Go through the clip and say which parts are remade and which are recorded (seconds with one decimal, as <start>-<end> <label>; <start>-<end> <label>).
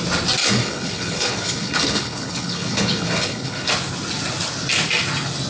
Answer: 0.0-0.4 recorded; 0.4-3.7 remade; 3.7-5.5 recorded